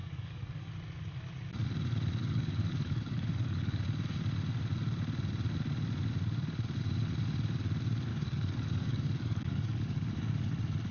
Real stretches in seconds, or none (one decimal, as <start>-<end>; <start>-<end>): 0.7-2.2; 3.8-8.1; 10.5-10.9